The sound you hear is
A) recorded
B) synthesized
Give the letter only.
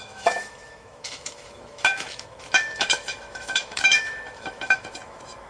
B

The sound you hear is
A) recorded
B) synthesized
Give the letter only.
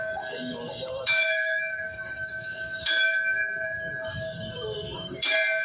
B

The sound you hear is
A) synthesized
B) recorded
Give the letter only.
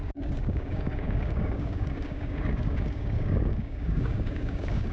A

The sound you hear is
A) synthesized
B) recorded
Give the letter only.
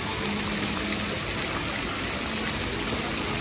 B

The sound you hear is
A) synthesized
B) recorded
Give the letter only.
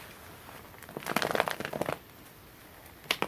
B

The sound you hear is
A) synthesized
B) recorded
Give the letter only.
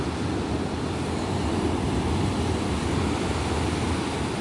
A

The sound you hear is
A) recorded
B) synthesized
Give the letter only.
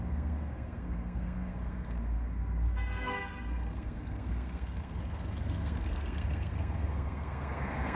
B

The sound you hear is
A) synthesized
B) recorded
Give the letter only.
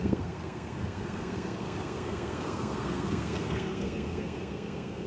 A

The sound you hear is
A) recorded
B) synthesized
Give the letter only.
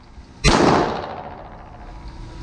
A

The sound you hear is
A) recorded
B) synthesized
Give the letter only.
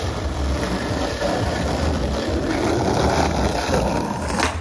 A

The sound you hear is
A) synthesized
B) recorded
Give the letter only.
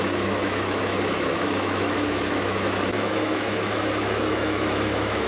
A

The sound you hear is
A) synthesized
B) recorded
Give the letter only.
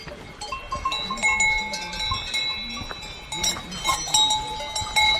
B